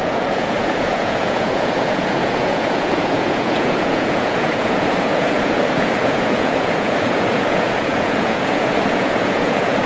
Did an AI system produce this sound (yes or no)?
yes